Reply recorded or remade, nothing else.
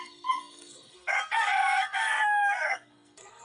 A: remade